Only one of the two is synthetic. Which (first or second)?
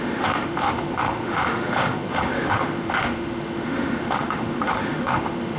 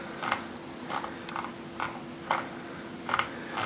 first